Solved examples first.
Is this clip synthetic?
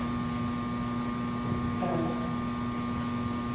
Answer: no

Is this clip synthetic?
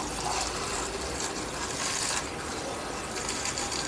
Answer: yes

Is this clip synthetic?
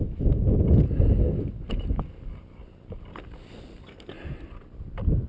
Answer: no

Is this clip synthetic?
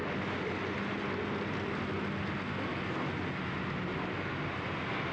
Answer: no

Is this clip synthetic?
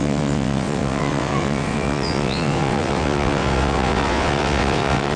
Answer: yes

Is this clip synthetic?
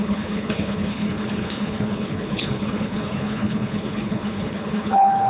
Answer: yes